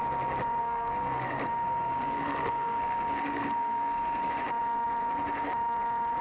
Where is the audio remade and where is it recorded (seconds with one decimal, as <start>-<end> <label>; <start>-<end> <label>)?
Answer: 0.0-0.6 recorded; 0.6-4.3 remade; 4.3-6.2 recorded